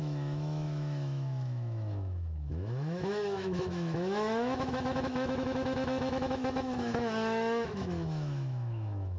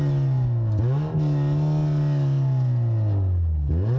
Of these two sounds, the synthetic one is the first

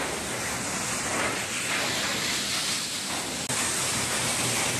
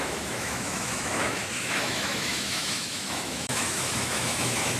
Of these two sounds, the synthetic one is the second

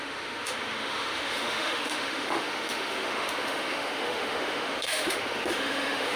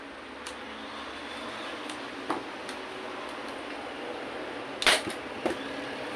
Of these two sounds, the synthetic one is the first